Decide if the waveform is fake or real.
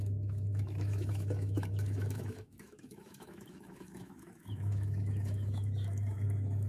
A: fake